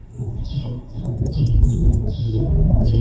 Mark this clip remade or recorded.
remade